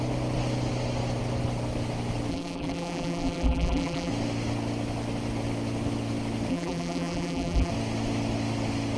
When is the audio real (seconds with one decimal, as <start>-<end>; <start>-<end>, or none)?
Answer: 0.0-2.3; 4.1-6.5; 7.7-9.0